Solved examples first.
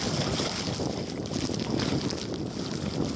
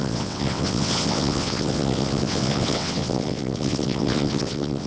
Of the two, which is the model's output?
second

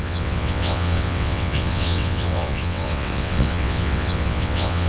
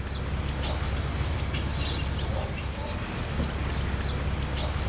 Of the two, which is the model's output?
first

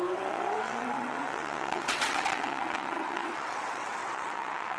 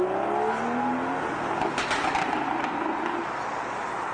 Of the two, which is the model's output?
first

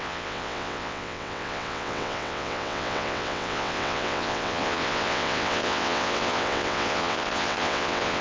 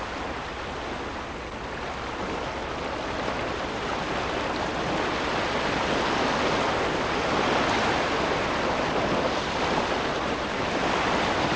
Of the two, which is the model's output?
first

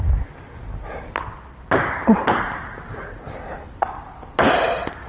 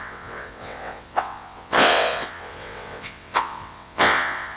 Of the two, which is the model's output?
second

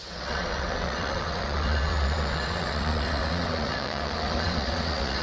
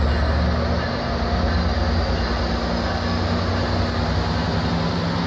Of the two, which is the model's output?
first